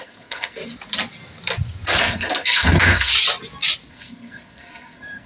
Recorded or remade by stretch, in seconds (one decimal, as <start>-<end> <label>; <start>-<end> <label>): 0.0-0.6 remade; 0.6-2.0 recorded; 2.0-3.1 remade; 3.1-3.9 recorded; 3.9-5.3 remade